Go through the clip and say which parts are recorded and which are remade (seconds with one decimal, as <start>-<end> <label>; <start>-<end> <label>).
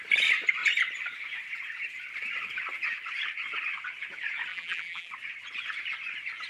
0.0-4.5 recorded; 4.5-5.1 remade; 5.1-6.5 recorded